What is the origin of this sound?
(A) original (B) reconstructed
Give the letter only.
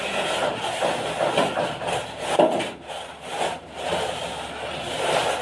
A